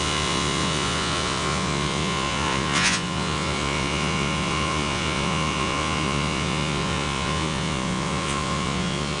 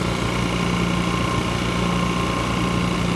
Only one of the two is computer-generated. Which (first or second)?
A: first